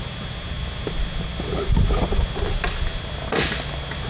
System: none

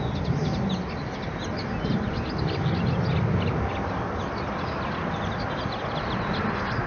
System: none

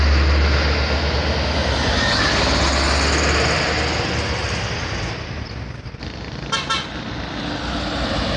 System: none